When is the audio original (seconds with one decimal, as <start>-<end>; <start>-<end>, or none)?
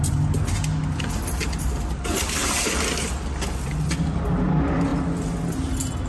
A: 0.0-6.1